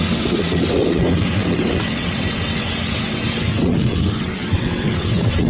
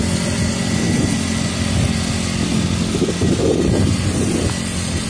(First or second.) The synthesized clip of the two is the first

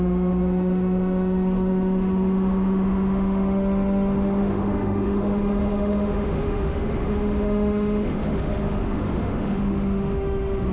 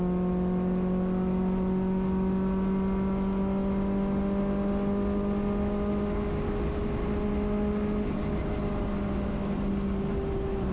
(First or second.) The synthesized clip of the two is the first